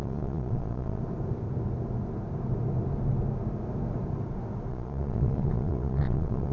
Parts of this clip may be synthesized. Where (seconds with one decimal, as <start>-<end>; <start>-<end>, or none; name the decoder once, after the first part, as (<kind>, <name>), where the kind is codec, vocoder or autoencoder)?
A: 0.0-1.0 (vocoder, Vocos); 4.7-6.5